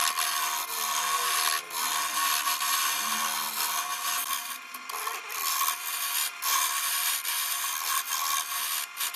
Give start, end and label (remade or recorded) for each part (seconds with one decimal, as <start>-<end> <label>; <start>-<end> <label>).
0.0-9.2 recorded